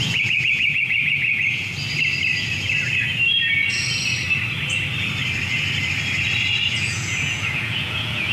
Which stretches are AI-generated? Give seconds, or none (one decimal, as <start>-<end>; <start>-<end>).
0.0-1.7; 6.7-8.3